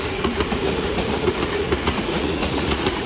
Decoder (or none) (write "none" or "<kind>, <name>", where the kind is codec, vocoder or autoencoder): vocoder, Vocos